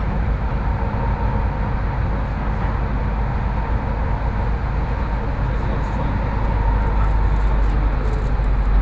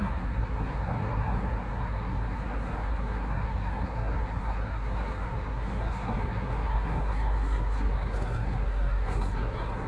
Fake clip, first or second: second